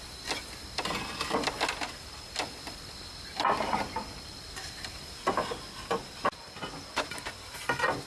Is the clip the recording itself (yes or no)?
yes